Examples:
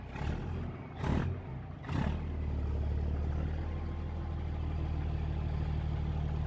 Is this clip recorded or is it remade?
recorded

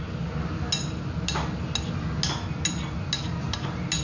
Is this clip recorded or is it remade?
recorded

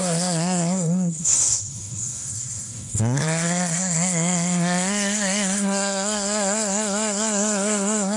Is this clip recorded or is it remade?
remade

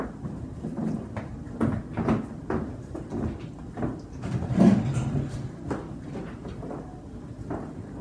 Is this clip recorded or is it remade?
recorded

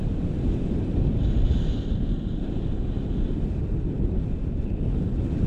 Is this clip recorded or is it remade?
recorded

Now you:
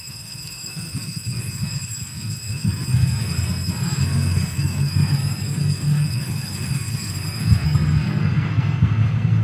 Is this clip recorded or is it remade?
remade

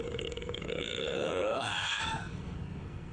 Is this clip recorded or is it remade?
remade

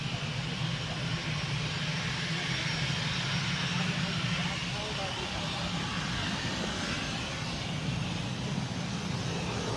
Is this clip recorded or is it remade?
recorded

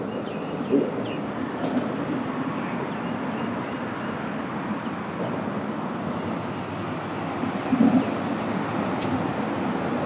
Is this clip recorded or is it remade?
recorded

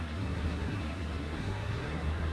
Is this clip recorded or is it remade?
remade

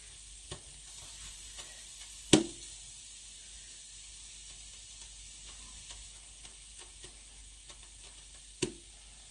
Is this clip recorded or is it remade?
recorded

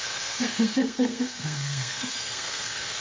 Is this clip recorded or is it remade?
remade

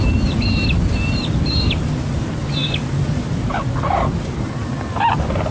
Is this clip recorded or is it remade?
recorded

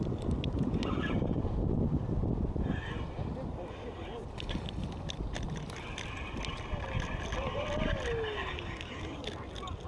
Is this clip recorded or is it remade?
recorded